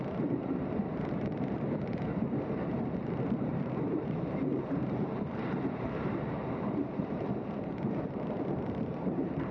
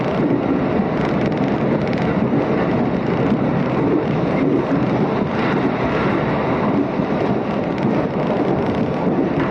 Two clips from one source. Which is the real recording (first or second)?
second